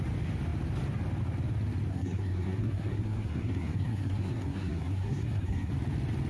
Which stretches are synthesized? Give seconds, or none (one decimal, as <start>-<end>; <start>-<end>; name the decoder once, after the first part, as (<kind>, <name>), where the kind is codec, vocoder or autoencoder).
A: 1.9-5.7 (codec, SNAC)